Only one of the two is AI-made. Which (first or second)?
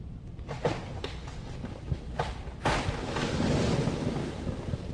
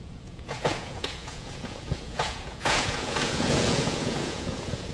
second